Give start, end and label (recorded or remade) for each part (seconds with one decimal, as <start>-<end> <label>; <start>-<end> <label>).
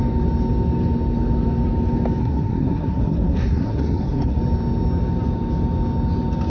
0.0-2.2 recorded; 2.2-4.4 remade; 4.4-6.5 recorded